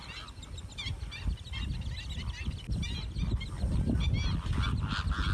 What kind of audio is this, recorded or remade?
recorded